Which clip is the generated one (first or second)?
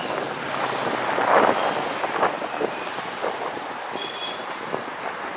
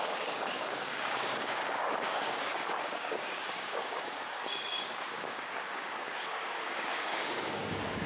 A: second